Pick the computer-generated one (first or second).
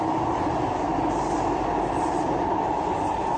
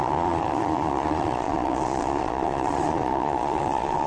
second